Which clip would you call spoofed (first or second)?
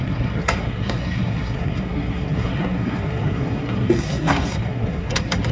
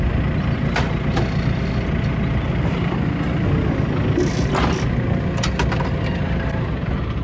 first